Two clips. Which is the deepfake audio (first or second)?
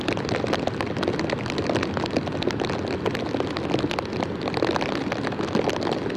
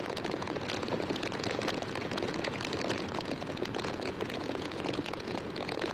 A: second